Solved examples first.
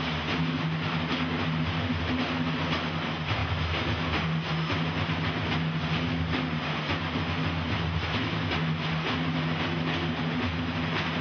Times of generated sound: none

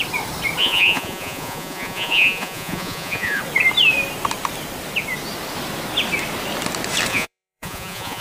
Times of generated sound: 0.6-3.4 (vocoder, Vocos); 7.1-8.2

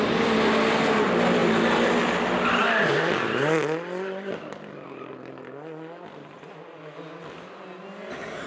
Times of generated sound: none

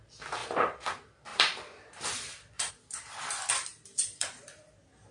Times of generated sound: 0.4-0.9 (vocoder, BigVGAN v2); 1.3-2.7; 3.7-4.3

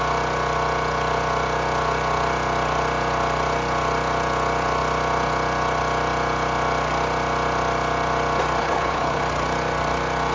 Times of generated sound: 8.6-9.2 (codec, HILCodec)

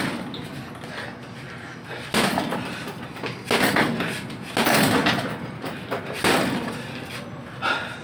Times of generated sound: 5.0-6.2 (vocoder, BigVGAN v2)